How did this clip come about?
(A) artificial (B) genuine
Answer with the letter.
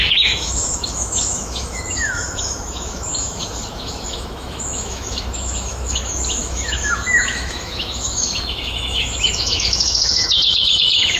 A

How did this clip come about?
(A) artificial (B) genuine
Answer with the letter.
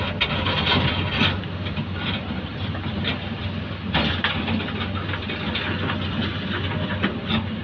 B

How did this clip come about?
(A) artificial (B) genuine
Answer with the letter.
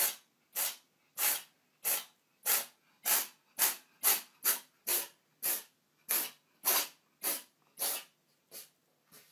B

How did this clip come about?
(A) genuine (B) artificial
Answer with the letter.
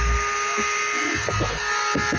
A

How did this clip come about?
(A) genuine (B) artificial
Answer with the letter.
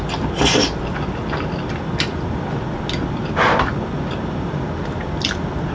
A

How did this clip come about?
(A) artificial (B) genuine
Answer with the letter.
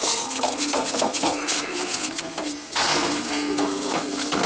A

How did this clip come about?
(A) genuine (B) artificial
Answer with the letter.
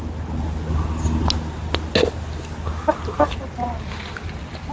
A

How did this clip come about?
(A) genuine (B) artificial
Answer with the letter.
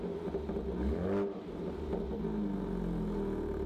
A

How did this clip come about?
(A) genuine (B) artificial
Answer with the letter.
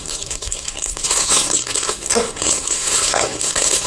B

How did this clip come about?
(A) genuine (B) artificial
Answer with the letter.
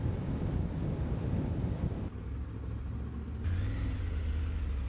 A